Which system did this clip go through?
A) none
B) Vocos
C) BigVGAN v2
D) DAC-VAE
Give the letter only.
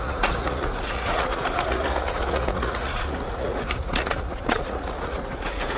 B